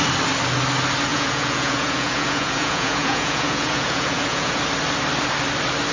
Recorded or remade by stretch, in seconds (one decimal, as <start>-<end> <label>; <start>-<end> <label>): 0.0-1.1 recorded; 1.1-4.6 remade; 4.6-5.9 recorded